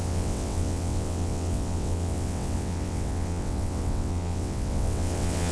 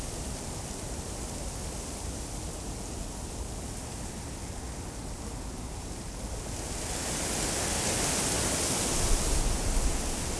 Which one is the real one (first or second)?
second